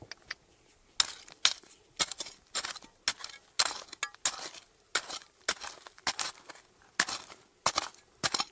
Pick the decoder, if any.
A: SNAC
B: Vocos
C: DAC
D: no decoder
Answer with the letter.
D